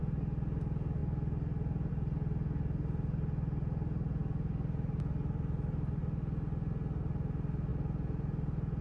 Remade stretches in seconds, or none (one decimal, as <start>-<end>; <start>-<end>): none